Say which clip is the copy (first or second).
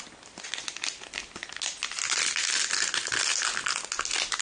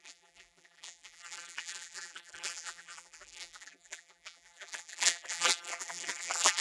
second